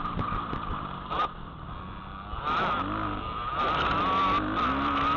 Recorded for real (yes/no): yes